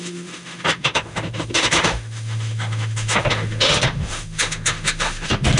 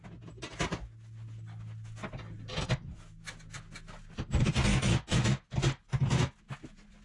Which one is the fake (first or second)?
first